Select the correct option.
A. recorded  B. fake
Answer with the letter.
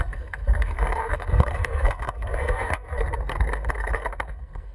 B